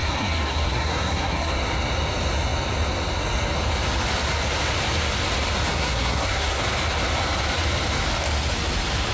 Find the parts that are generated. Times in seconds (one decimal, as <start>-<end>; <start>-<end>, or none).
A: 0.0-1.5; 5.7-6.6